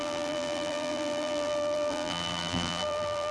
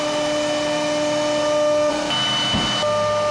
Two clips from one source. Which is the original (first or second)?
second